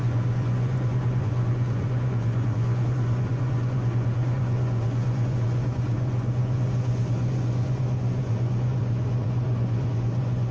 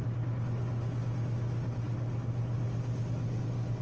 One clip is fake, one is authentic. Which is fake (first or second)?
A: first